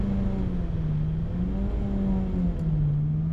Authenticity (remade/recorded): recorded